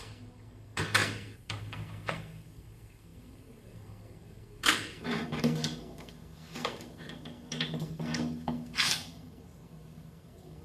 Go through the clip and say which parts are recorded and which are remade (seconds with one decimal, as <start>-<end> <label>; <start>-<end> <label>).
0.0-10.6 remade

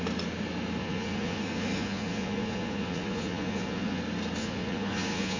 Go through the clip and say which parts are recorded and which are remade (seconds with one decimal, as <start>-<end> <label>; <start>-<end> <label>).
0.0-0.8 recorded; 0.8-4.0 remade; 4.0-4.4 recorded; 4.4-5.4 remade